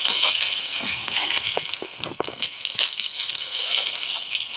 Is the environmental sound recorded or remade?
remade